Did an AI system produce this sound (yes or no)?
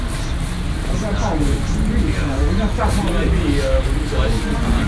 no